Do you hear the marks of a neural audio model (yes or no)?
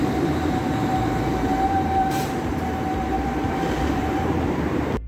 yes